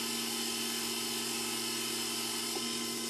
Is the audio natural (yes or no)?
yes